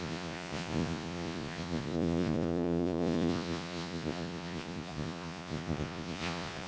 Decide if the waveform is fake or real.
fake